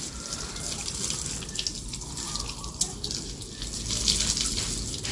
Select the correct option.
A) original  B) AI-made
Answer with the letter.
A